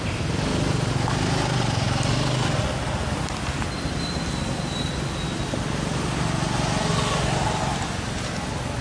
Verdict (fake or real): real